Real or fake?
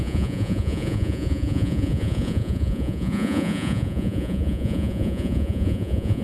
fake